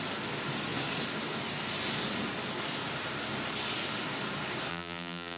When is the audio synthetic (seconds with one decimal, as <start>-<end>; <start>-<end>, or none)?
4.7-5.4

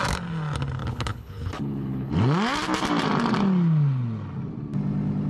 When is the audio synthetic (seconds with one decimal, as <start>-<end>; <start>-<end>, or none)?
0.8-2.1

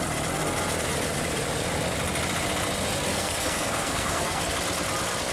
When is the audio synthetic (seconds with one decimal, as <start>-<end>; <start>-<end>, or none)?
3.1-4.4

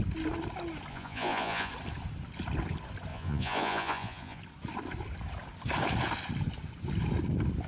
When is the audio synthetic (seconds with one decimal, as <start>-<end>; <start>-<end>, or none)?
0.9-1.7; 3.1-4.4